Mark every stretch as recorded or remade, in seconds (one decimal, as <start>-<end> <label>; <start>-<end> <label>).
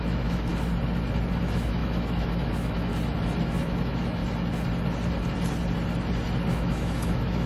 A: 0.0-0.5 remade; 0.5-1.4 recorded; 1.4-2.9 remade; 2.9-3.4 recorded; 3.4-4.2 remade; 4.2-6.5 recorded; 6.5-7.5 remade